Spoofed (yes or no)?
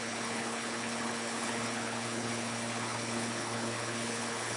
yes